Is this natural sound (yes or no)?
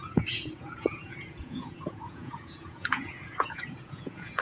no